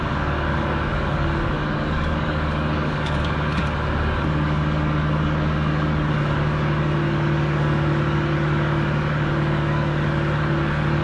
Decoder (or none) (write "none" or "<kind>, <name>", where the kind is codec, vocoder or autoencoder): codec, DAC